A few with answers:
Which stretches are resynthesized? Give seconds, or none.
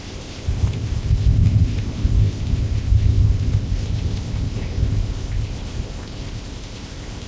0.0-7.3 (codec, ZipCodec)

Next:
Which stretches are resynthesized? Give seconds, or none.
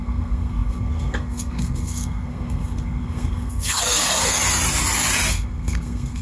0.0-4.4 (codec, SNAC); 5.3-6.2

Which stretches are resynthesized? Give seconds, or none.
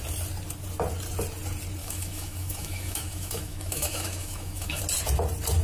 1.8-4.8 (autoencoder, DAC-VAE)